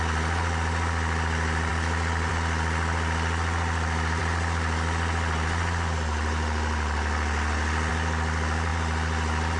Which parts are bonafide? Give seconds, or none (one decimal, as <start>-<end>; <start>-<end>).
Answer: 0.0-9.6